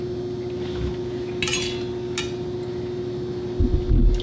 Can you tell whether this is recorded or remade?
recorded